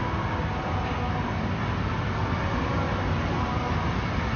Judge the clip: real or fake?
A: real